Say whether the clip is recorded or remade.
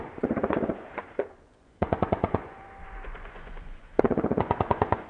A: remade